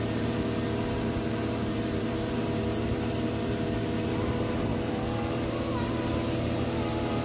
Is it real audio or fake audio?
fake